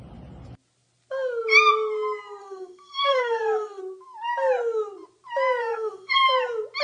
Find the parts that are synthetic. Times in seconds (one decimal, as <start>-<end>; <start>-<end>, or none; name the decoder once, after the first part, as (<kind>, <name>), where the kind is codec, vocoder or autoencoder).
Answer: 2.4-3.8 (codec, SNAC); 5.6-6.1